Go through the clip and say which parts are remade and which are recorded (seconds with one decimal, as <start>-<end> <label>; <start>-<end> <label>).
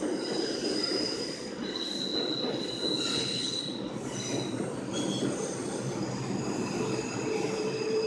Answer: 0.0-3.1 recorded; 3.1-3.6 remade; 3.6-8.1 recorded